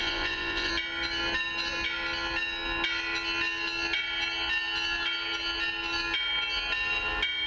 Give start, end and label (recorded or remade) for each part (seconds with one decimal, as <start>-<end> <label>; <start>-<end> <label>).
0.0-0.7 remade; 0.7-7.5 recorded